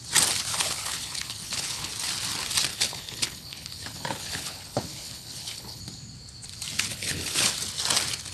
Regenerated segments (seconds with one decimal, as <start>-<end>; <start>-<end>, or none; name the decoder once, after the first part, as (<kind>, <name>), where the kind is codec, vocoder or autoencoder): 0.5-1.9 (codec, HILCodec); 2.7-5.8; 6.9-7.5